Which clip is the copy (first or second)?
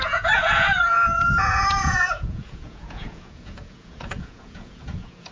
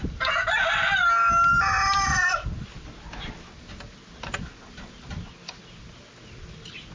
first